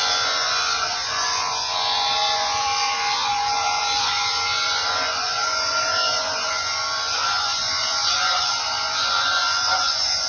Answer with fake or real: fake